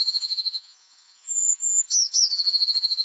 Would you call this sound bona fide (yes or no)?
no